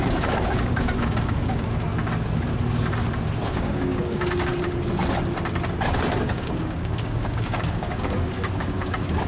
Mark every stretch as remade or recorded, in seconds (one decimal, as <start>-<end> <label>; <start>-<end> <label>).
0.0-1.9 remade; 1.9-3.4 recorded; 3.4-4.5 remade; 4.5-6.2 recorded; 6.2-9.3 remade